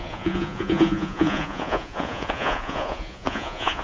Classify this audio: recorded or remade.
remade